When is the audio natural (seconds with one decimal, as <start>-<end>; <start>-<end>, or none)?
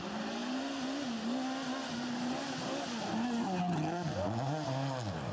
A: 0.0-5.3